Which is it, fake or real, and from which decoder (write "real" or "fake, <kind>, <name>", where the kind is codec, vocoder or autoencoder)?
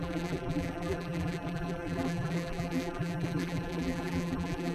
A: fake, vocoder, BigVGAN v2